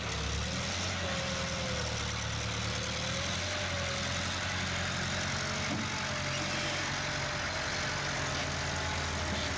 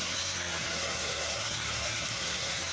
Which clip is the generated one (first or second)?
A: second